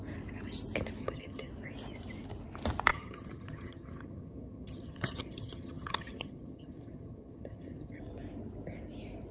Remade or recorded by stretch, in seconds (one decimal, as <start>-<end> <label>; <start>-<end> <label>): 0.0-1.0 recorded; 1.0-1.5 remade; 1.5-2.9 recorded; 2.9-8.0 remade; 8.0-9.3 recorded